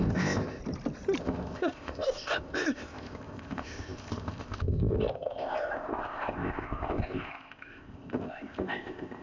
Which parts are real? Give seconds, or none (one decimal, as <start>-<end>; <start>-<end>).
0.6-1.2